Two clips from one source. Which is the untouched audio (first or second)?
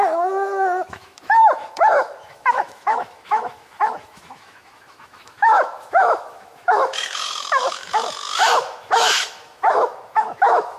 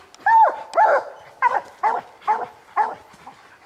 second